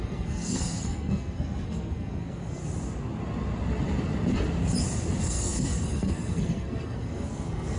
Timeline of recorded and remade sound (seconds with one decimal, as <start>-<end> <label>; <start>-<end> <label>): 0.0-2.6 remade; 2.6-5.2 recorded; 5.2-7.8 remade